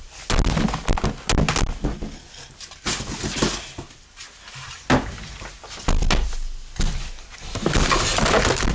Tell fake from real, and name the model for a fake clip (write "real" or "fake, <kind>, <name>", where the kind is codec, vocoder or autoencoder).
real